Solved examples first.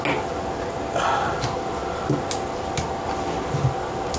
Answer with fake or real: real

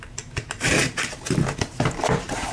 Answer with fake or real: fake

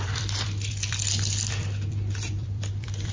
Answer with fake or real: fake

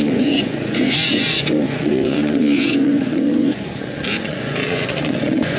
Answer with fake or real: fake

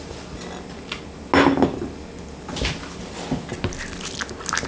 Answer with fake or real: real